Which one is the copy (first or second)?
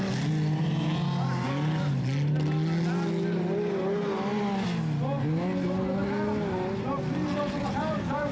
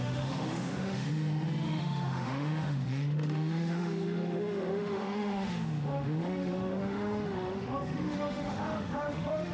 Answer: second